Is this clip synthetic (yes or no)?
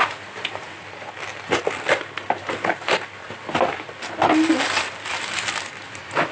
no